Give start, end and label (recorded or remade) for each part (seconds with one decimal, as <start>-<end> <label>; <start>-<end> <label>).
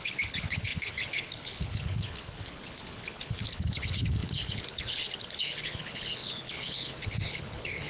0.0-7.9 remade